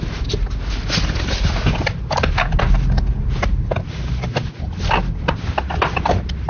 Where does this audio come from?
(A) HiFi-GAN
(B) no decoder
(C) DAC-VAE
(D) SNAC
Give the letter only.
B